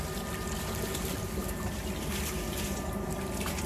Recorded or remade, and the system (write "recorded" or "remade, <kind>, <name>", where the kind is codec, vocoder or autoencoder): recorded